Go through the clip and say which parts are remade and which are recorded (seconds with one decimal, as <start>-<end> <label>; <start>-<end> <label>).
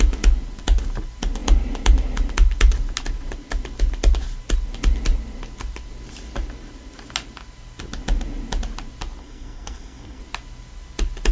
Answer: 0.0-9.2 recorded; 9.2-10.2 remade; 10.2-11.3 recorded